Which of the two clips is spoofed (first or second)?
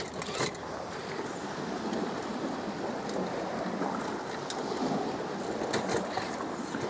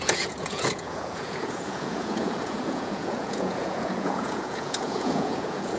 second